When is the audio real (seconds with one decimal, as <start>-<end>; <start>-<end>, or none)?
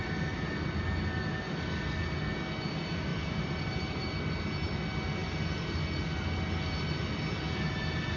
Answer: 0.0-3.1; 4.1-8.2